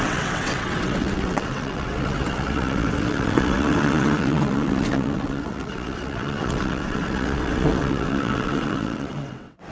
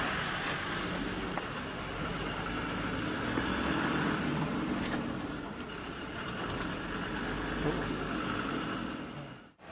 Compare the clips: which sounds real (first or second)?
second